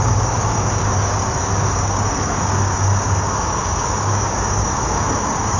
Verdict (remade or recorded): remade